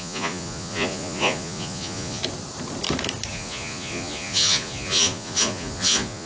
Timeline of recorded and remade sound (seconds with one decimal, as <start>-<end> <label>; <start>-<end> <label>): 0.0-2.2 remade; 2.2-3.3 recorded; 3.3-6.3 remade